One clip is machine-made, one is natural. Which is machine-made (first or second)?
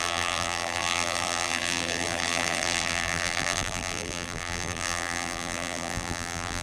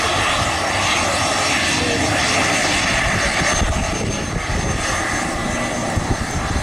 first